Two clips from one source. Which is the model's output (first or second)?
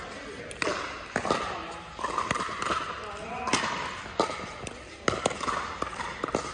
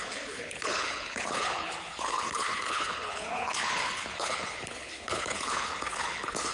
second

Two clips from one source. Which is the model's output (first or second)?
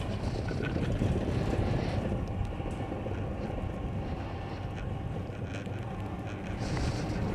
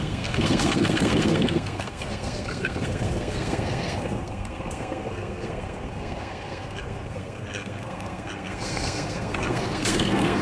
second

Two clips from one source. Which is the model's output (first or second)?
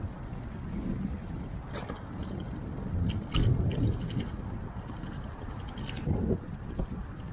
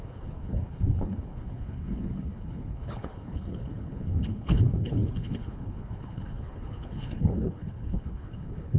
second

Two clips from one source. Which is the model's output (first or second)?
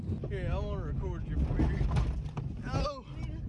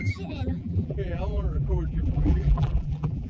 second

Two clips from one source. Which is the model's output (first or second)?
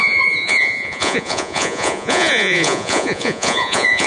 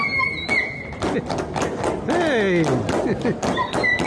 first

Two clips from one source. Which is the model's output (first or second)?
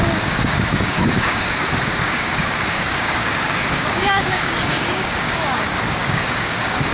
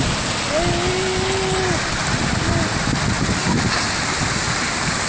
first